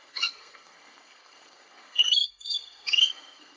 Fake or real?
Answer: fake